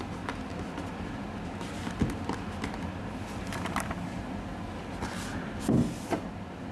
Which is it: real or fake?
real